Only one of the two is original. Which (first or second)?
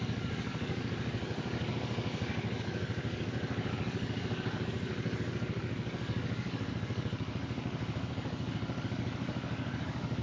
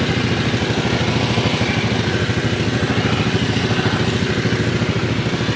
second